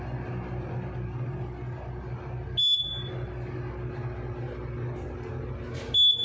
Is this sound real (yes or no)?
yes